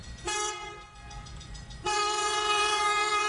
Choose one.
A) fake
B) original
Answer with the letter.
A